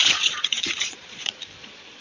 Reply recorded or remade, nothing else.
remade